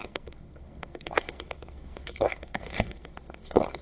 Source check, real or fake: fake